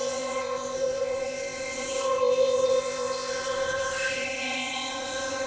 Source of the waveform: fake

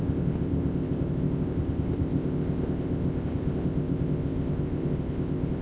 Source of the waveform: fake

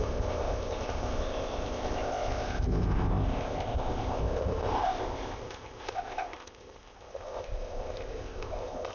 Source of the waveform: fake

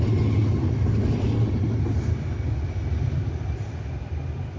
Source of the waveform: real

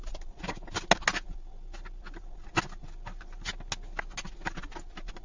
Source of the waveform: real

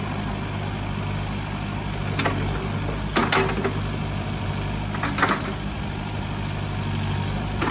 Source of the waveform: real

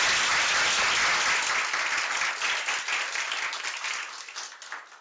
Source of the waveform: real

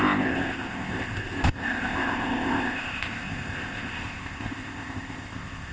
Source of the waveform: fake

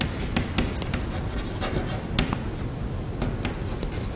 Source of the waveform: real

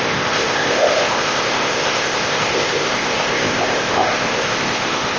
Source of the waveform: fake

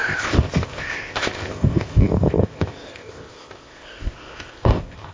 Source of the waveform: fake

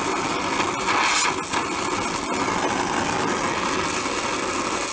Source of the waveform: real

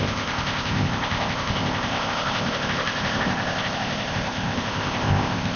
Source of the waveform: fake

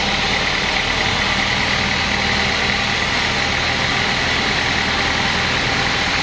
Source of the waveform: real